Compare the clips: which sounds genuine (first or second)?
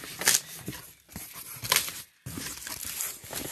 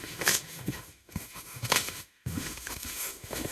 first